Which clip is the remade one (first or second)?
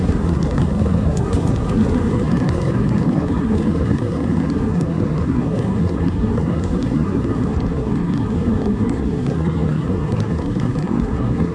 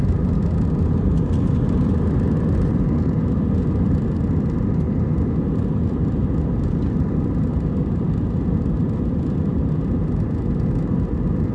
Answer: first